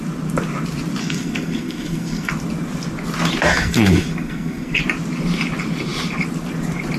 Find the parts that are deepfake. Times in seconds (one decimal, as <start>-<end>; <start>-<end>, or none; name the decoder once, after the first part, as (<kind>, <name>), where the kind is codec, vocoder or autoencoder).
1.0-2.3 (codec, SNAC); 3.5-4.8